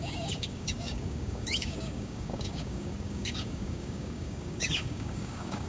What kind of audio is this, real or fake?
fake